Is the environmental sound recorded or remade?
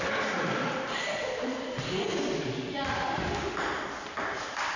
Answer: remade